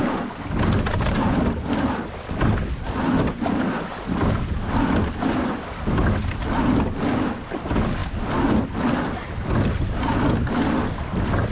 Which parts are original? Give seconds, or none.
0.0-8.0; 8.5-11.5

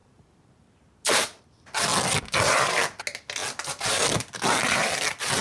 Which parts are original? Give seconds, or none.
1.4-5.4